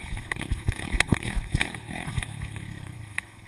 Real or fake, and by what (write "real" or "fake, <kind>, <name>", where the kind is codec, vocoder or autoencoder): fake, codec, HILCodec